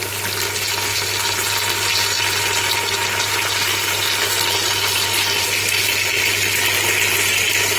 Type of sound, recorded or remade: recorded